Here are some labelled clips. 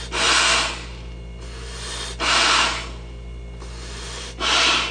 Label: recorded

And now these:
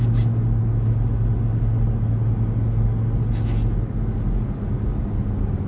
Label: recorded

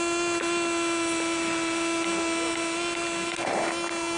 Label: recorded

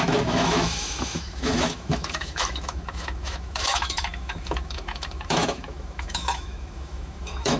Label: remade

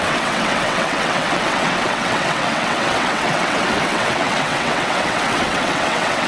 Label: remade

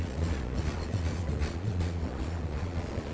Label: remade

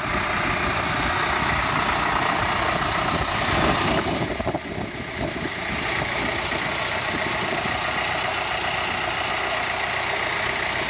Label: recorded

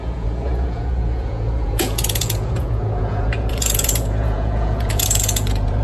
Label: remade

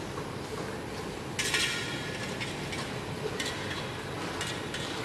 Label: recorded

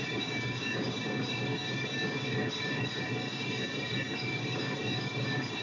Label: remade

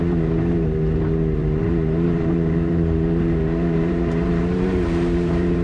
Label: remade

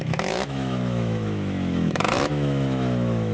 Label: remade